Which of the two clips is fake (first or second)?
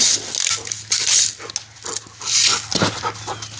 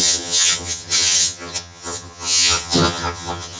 second